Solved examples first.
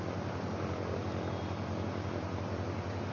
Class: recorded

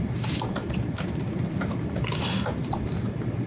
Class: recorded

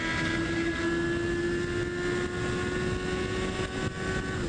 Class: recorded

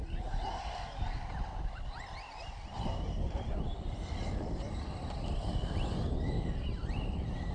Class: recorded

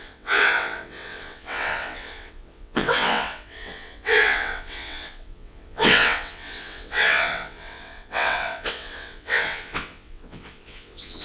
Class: remade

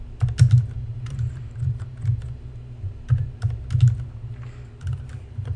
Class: recorded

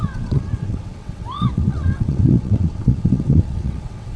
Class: remade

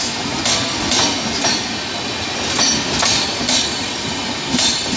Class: recorded